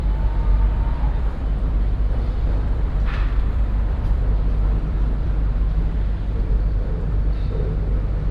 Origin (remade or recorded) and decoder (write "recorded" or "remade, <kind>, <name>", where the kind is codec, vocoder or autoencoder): remade, vocoder, BigVGAN v2